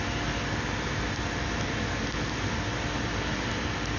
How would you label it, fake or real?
real